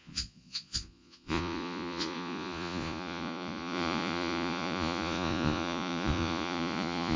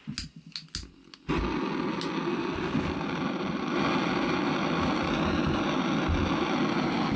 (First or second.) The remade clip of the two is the first